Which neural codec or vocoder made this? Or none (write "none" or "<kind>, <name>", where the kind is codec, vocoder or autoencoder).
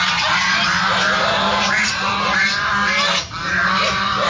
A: vocoder, BigVGAN v2